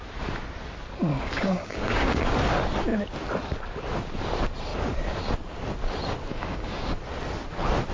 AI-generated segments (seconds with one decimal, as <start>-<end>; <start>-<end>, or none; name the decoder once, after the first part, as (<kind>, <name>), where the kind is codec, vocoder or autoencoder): 1.1-2.2 (codec, DAC); 6.3-7.0